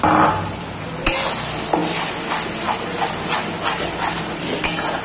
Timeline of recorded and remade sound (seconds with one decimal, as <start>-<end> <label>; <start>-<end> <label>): 0.0-5.0 recorded